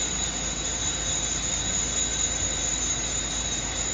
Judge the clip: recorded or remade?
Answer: recorded